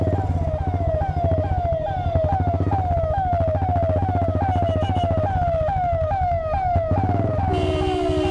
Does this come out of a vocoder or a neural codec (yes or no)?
no